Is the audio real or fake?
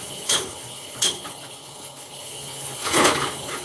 fake